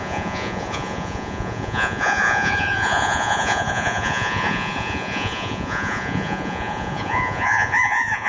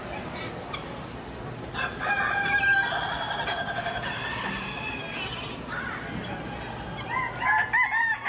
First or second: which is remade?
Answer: first